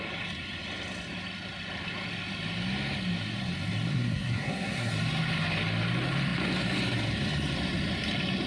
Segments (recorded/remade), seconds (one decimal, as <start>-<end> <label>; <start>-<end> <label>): 0.0-3.9 recorded; 3.9-4.9 remade; 4.9-8.5 recorded